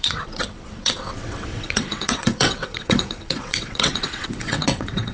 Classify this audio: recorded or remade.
remade